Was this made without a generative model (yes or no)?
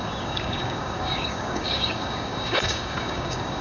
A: no